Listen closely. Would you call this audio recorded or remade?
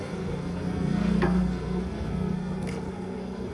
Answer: remade